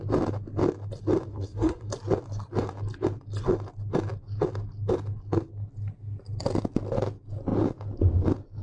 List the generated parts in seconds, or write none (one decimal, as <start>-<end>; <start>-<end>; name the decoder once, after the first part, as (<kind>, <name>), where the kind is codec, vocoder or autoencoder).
1.3-1.9 (codec, SNAC)